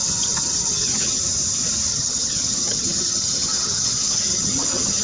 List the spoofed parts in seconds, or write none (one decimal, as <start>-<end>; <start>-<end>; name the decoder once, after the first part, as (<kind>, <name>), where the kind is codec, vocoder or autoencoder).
0.0-1.2 (vocoder, HiFi-GAN); 1.9-5.0